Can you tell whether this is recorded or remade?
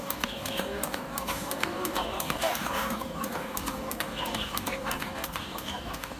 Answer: remade